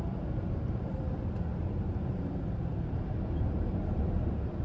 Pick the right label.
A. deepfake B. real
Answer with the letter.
A